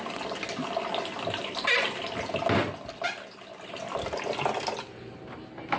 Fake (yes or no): no